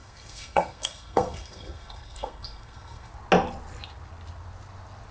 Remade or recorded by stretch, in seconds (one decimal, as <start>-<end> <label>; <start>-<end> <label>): 0.0-3.1 remade; 3.1-5.1 recorded